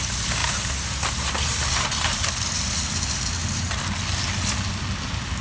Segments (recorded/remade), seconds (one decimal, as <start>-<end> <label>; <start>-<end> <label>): 0.0-5.4 recorded